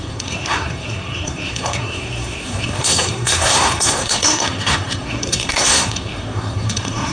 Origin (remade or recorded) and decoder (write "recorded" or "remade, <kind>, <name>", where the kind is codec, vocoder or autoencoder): remade, codec, SNAC